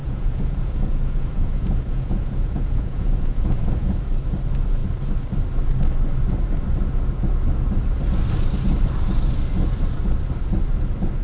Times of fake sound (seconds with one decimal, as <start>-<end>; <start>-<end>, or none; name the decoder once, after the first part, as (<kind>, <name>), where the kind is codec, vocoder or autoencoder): 0.0-4.0 (vocoder, Vocos)